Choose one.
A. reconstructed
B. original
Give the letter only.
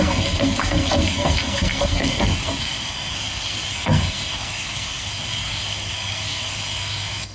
A